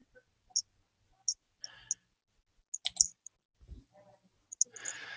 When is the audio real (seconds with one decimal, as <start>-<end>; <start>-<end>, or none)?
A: 0.0-5.2